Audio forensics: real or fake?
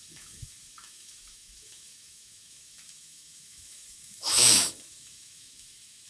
fake